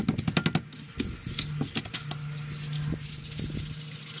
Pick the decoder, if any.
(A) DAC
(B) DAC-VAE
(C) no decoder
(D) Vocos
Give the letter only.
C